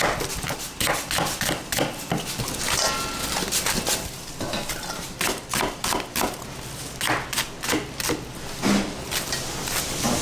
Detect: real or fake real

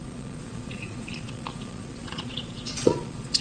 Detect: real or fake fake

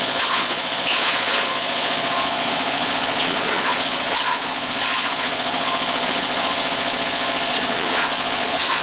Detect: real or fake fake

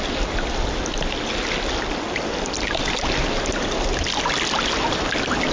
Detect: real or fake real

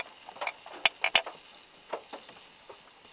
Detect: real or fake real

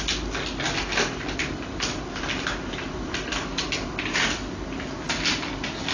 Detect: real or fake real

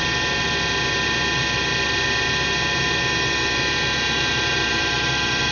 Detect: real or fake real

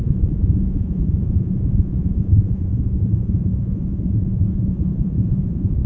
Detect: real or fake fake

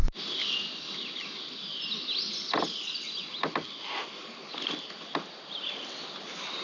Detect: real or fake real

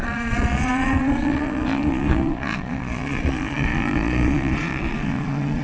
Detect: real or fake fake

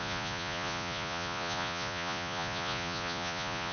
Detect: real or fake fake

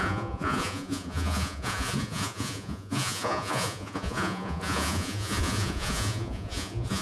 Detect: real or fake fake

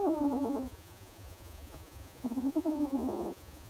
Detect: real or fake fake